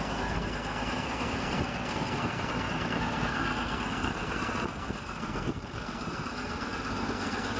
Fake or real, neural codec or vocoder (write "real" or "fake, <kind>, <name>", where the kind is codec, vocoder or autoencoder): fake, codec, SNAC